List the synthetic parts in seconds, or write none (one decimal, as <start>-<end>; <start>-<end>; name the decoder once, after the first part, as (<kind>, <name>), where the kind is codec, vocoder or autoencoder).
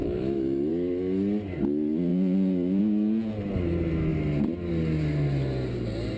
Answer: 0.0-0.7 (autoencoder, DAC-VAE)